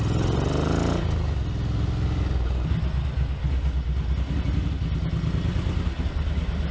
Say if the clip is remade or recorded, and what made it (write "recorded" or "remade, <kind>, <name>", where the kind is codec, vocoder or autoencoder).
recorded